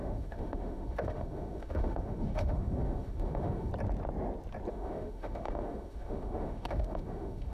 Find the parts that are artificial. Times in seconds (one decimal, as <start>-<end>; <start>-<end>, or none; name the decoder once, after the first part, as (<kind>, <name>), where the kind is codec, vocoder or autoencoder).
0.0-3.7 (autoencoder, DAC-VAE); 4.7-7.5